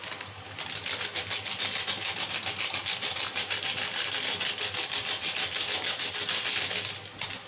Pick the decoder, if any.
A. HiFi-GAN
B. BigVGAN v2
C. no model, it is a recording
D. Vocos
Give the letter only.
B